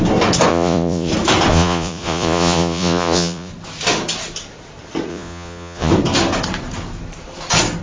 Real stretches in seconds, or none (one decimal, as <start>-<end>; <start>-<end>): 0.0-0.5; 1.1-1.5; 3.5-5.1; 5.9-7.8